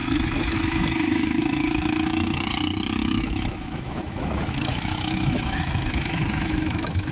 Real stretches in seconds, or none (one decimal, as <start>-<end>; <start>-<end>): 2.5-3.0

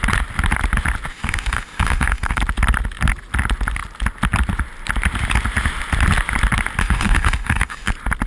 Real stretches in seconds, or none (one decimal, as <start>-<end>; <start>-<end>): 0.0-1.1; 2.4-6.8; 7.9-8.3

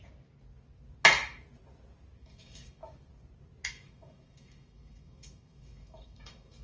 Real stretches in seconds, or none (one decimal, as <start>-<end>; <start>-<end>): 0.0-2.2; 2.8-3.7

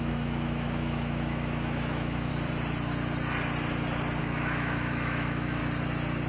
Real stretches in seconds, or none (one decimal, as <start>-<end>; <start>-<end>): 2.3-4.2; 5.6-6.3